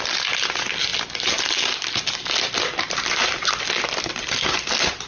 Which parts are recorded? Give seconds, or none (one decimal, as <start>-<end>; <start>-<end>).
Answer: 0.0-5.1